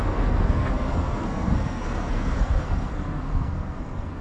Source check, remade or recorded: remade